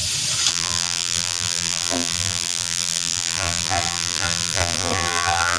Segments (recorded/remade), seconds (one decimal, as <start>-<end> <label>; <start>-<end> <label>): 0.0-0.5 recorded; 0.5-5.6 remade